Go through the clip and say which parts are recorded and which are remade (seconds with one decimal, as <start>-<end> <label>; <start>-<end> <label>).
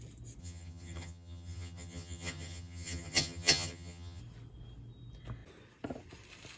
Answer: 0.0-0.4 recorded; 0.4-4.2 remade; 4.2-6.6 recorded